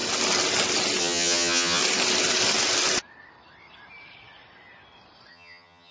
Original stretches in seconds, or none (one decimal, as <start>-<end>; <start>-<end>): 0.0-1.0; 1.8-5.3